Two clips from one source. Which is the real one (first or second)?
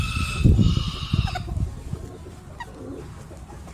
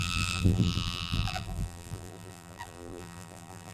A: first